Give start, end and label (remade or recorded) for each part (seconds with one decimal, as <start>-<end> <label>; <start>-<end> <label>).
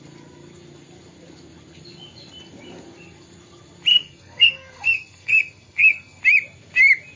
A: 0.0-3.9 recorded; 3.9-6.2 remade; 6.2-7.2 recorded